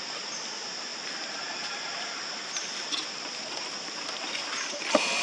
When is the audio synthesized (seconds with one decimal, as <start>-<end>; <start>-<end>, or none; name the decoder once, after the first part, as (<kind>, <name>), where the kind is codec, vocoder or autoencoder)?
none